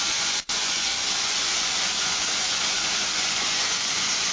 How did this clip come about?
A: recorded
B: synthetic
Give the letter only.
B